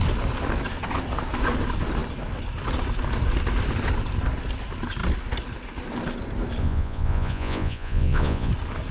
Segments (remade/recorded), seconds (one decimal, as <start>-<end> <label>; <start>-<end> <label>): 0.0-6.6 recorded; 6.6-8.5 remade; 8.5-8.9 recorded